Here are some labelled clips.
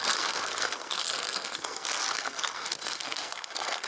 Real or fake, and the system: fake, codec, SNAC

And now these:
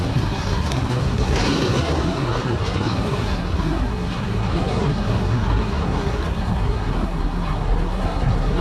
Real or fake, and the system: fake, codec, SNAC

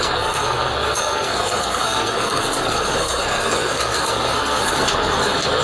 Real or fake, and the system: fake, codec, SNAC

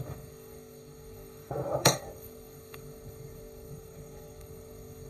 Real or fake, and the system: fake, codec, SNAC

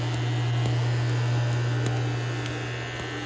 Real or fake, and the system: real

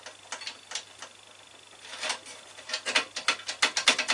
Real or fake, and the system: real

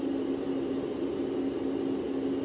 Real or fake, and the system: real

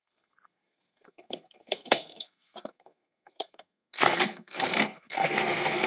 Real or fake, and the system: fake, codec, SNAC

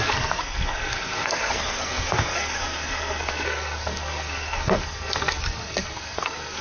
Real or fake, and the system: fake, codec, SNAC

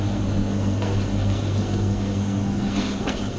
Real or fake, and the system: fake, codec, SNAC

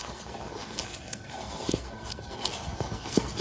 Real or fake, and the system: fake, codec, SNAC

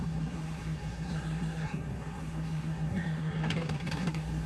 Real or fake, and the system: fake, codec, SNAC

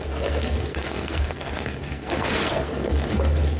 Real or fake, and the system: fake, codec, SNAC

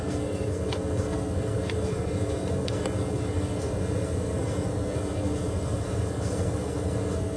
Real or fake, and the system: fake, codec, SNAC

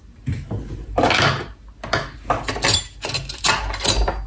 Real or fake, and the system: real